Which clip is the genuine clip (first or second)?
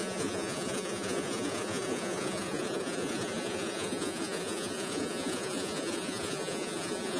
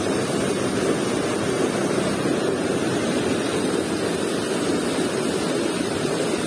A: second